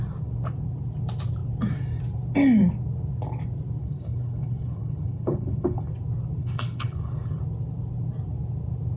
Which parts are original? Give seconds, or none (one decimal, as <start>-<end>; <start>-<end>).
0.0-3.8; 5.9-6.4; 7.4-9.0